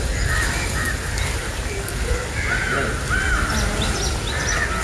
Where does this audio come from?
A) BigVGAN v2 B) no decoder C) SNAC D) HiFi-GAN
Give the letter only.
B